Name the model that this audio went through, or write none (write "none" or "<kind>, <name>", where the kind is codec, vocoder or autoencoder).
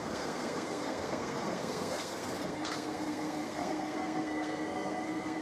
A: codec, SNAC